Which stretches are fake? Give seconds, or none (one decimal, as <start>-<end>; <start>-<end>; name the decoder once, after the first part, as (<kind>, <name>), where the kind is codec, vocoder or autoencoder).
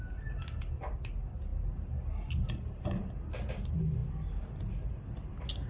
none